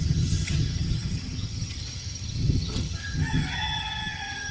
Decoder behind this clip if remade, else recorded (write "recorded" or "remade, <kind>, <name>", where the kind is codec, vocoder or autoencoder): remade, vocoder, HiFi-GAN